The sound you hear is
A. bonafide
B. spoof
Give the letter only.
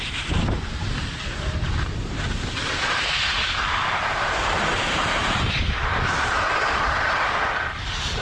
B